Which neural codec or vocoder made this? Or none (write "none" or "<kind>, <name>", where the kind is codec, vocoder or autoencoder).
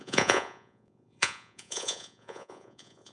vocoder, Vocos